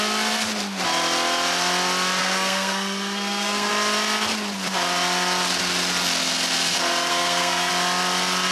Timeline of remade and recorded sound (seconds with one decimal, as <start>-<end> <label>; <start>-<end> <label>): 0.0-2.2 recorded; 2.2-3.7 remade; 3.7-7.1 recorded; 7.1-7.7 remade; 7.7-8.5 recorded